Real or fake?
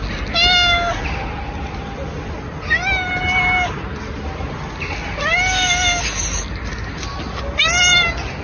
real